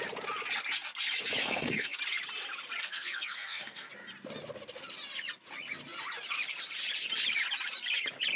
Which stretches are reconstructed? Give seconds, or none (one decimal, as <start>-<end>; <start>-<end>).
1.4-2.0; 2.8-3.9